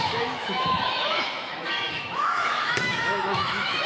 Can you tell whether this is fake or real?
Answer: fake